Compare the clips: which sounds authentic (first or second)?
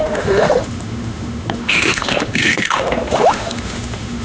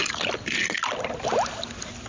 second